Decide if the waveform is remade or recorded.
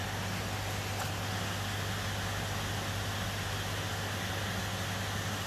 recorded